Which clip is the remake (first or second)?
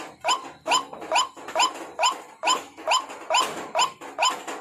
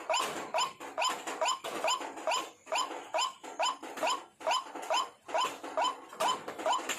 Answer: second